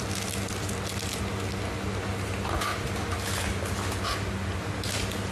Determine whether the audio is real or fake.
real